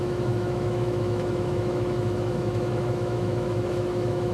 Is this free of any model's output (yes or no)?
no